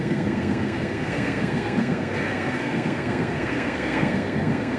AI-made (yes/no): yes